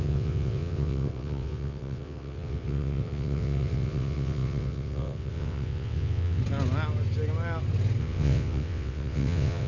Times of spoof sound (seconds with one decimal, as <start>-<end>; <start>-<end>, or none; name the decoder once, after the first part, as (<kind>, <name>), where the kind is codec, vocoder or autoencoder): 0.0-6.4 (vocoder, WaveNeXt); 8.0-9.7

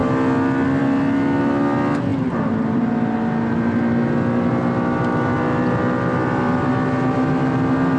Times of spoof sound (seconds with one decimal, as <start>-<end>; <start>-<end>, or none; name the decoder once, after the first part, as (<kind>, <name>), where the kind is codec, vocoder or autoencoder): none

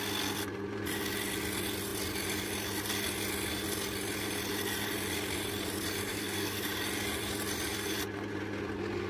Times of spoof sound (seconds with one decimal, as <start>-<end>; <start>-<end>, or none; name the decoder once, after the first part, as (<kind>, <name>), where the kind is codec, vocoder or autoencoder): 6.1-6.6 (codec, SNAC)